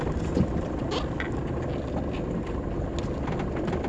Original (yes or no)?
yes